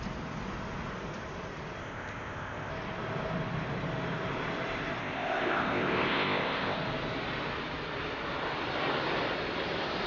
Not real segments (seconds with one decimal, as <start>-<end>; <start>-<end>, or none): 1.8-2.7; 5.0-6.8